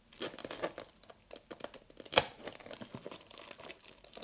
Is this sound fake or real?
real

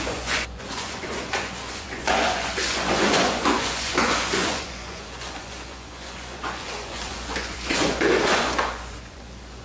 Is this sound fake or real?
fake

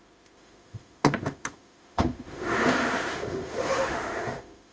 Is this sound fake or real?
fake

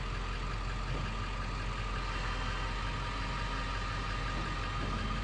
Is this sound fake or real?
real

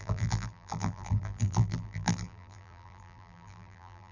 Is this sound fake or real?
fake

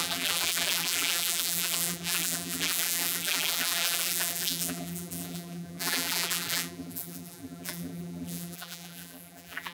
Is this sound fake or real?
fake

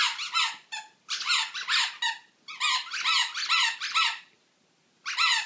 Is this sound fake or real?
real